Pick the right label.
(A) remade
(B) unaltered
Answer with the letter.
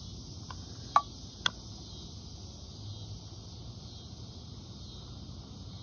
B